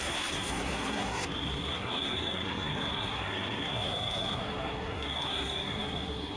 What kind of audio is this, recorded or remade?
remade